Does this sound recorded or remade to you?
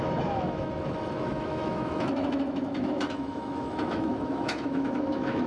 remade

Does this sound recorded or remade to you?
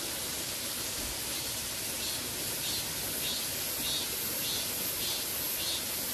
recorded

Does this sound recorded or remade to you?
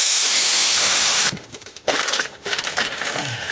remade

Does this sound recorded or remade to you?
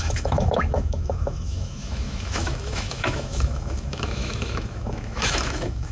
remade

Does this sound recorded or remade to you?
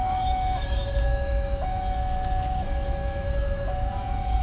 remade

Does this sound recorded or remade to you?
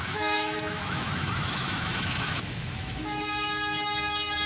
remade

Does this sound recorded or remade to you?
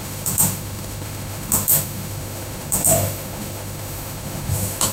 remade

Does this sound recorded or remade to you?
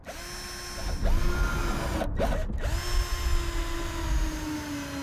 recorded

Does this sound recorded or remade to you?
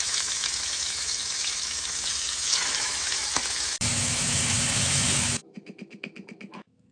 remade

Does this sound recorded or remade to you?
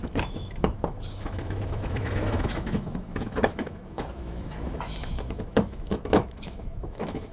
remade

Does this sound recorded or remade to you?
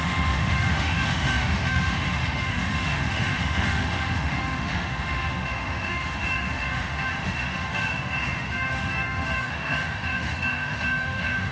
remade